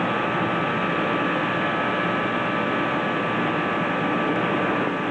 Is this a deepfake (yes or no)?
no